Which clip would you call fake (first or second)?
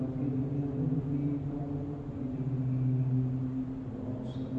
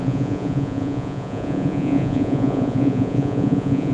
second